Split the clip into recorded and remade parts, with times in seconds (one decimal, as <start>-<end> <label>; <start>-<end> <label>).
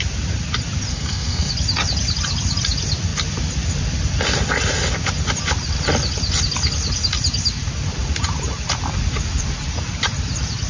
0.0-0.9 recorded; 0.9-1.5 remade; 1.5-10.7 recorded